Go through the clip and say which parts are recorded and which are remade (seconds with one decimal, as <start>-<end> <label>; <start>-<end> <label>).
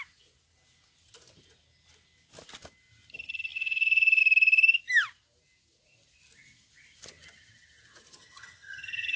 0.0-8.2 recorded; 8.2-9.2 remade